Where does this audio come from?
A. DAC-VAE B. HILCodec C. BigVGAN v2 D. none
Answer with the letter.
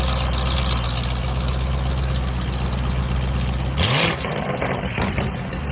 D